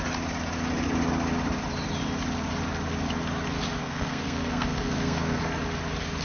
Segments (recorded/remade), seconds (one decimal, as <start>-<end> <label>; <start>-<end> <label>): 0.0-3.8 recorded; 3.8-5.4 remade; 5.4-6.2 recorded